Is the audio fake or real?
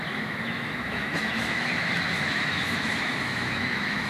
fake